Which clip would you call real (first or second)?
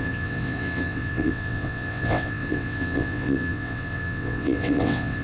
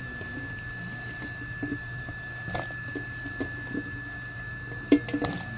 second